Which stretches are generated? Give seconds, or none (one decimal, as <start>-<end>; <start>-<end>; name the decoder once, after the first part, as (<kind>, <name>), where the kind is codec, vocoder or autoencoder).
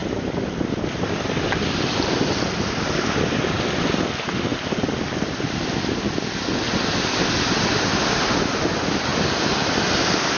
none